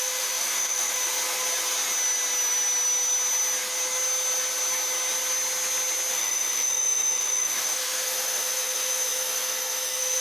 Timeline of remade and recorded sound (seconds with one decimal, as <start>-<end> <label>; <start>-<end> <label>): 0.0-1.0 remade; 1.0-6.1 recorded; 6.1-10.2 remade